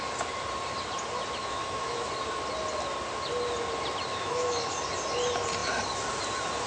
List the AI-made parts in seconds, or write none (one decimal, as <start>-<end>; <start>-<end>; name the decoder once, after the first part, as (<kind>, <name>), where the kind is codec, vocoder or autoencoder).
1.4-2.1 (autoencoder, DAC-VAE); 4.1-4.7

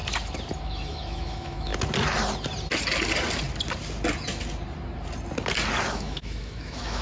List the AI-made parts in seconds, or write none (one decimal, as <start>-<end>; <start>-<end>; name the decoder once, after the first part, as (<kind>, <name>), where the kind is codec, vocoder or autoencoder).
0.6-1.7 (autoencoder, DAC-VAE); 5.9-7.0

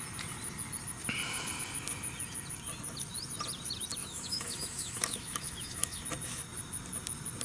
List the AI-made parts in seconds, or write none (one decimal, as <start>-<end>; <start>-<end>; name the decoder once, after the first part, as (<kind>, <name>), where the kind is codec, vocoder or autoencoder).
4.0-6.0 (autoencoder, DAC-VAE)

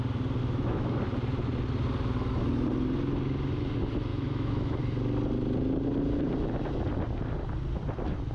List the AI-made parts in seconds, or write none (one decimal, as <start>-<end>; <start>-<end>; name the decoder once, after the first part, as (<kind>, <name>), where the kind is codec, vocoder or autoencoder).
0.4-1.0 (autoencoder, DAC-VAE); 4.1-4.8

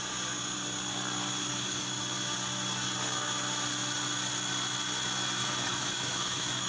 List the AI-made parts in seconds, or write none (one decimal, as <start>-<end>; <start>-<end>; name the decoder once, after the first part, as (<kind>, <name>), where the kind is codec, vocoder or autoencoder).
1.5-2.0 (autoencoder, DAC-VAE); 5.4-6.7

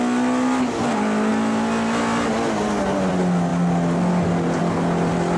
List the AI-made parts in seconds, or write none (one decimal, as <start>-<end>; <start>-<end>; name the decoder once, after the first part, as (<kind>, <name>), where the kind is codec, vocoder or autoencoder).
none